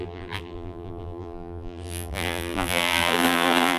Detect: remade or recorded remade